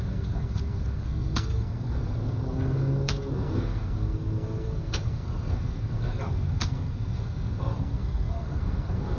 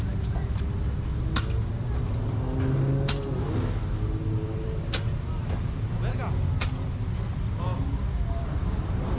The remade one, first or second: first